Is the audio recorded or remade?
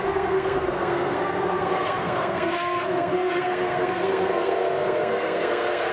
remade